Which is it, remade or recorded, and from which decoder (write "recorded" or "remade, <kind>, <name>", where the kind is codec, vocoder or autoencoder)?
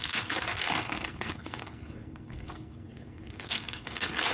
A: remade, codec, SNAC